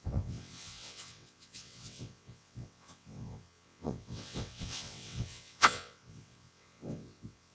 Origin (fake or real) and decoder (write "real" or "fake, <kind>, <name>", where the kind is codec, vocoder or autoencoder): fake, vocoder, WaveNeXt